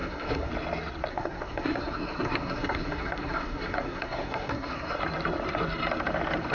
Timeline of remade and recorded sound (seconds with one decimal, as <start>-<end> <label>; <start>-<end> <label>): 0.0-0.5 remade; 0.5-1.1 recorded; 1.1-5.0 remade; 5.0-6.5 recorded